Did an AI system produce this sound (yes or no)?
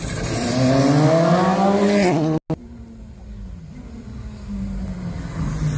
no